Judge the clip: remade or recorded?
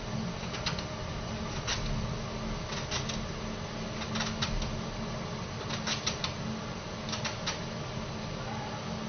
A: recorded